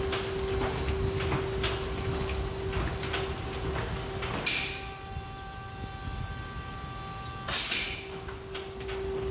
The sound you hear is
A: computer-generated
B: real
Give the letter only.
B